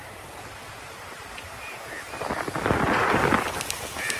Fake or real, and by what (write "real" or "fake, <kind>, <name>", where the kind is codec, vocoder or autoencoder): real